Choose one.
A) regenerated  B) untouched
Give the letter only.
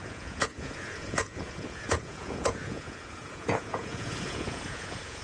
A